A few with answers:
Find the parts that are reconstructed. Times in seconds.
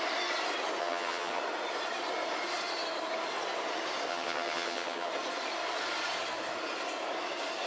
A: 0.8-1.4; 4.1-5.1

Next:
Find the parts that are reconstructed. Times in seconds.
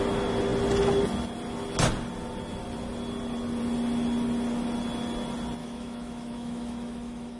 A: 5.6-7.4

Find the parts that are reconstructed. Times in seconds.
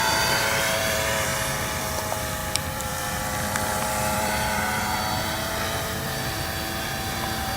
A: 0.0-1.3; 1.8-7.6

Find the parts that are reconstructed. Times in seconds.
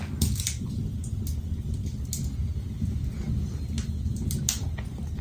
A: 0.0-1.0; 4.1-5.2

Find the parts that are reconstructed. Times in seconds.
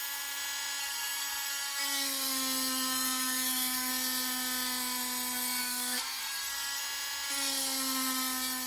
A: 0.8-3.9; 5.6-6.8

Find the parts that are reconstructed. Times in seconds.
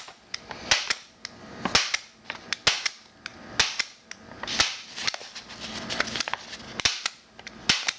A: none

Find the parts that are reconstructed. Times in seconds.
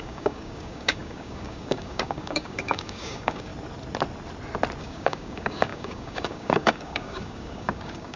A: 0.0-3.5; 4.8-8.2